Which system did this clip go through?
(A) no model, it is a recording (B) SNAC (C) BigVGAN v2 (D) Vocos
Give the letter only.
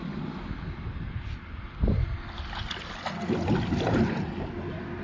A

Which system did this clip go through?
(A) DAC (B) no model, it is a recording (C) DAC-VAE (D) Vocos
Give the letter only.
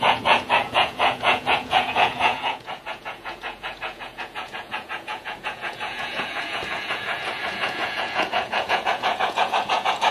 D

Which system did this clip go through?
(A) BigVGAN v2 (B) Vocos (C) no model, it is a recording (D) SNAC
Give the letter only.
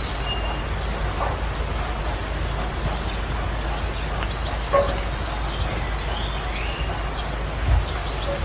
C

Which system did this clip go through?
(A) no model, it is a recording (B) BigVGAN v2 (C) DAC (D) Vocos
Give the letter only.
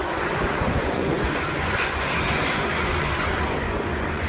D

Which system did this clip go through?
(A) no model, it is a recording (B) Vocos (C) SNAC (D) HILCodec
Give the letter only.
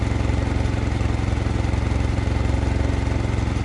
A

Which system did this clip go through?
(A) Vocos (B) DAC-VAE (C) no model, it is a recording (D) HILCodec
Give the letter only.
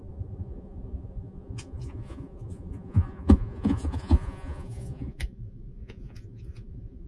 A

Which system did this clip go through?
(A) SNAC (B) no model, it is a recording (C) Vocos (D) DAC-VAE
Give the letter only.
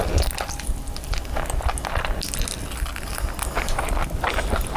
B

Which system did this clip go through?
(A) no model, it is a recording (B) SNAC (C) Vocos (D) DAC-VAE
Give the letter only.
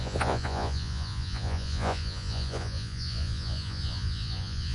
C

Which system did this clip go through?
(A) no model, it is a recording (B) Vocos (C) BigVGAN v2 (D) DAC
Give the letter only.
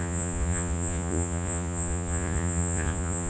B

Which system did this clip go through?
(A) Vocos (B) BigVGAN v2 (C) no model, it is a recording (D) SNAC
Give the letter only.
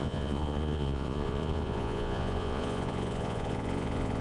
A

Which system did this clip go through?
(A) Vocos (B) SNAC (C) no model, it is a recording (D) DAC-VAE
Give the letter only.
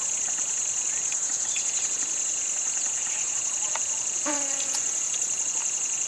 A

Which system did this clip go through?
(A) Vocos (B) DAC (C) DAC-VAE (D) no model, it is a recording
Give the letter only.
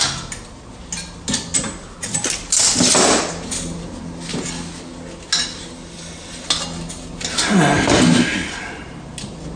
D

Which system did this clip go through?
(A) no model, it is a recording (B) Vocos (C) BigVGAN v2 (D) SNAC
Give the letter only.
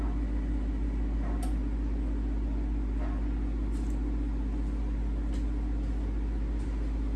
A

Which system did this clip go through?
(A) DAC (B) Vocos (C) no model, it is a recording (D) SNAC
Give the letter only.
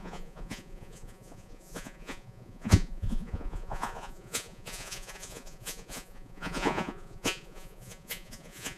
B